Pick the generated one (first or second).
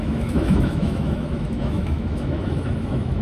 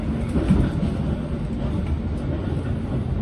first